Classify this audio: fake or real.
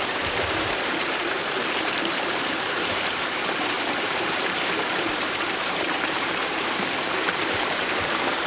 fake